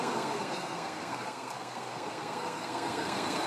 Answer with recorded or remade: remade